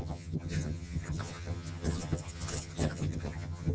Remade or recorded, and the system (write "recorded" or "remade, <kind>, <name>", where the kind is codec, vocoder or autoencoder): remade, vocoder, HiFi-GAN